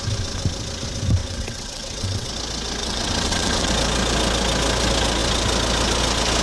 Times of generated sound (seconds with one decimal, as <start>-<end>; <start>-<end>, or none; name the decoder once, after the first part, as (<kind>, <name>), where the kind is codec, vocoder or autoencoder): 1.2-2.3 (vocoder, WaveNeXt); 2.8-3.7